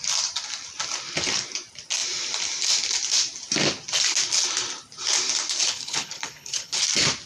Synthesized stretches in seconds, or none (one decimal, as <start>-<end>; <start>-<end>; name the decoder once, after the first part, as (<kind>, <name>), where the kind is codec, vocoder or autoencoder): 5.6-6.8 (codec, HILCodec)